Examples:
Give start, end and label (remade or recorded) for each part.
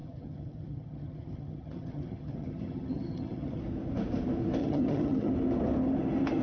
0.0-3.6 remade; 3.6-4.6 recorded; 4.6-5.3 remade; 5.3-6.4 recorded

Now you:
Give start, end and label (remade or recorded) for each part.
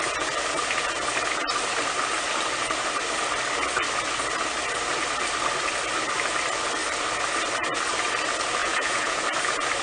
0.0-8.6 recorded; 8.6-9.2 remade; 9.2-9.8 recorded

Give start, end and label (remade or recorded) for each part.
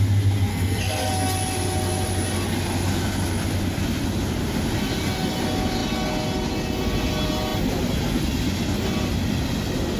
0.0-0.5 recorded; 0.5-1.1 remade; 1.1-10.0 recorded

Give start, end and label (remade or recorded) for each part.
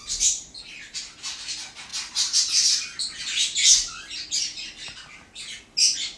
0.0-6.2 recorded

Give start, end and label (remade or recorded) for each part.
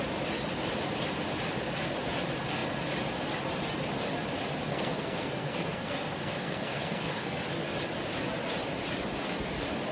0.0-4.7 recorded; 4.7-7.4 remade; 7.4-9.9 recorded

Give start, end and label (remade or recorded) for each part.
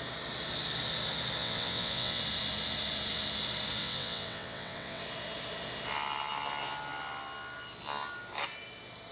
0.0-1.4 recorded; 1.4-2.2 remade; 2.2-3.8 recorded; 3.8-5.0 remade; 5.0-9.1 recorded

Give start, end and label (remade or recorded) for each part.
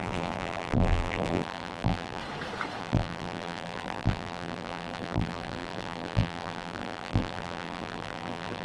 0.0-2.2 remade; 2.2-2.8 recorded; 2.8-8.6 remade